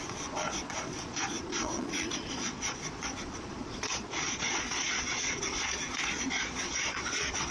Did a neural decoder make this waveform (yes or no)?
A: yes